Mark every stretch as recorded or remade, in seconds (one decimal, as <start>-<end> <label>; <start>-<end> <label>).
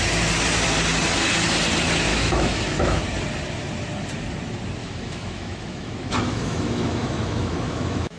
0.0-2.1 recorded; 2.1-3.0 remade; 3.0-4.8 recorded; 4.8-8.2 remade